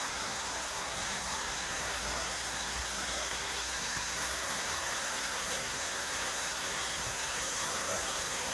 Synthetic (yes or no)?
yes